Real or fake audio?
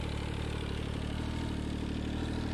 real